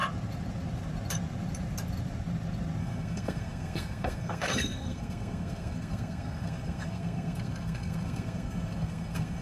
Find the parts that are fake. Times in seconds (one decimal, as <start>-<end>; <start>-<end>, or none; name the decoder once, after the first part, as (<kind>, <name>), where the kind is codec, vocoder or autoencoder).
2.8-9.4 (codec, SNAC)